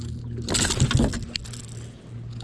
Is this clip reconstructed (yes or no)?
no